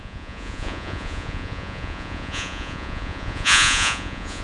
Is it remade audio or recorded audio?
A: remade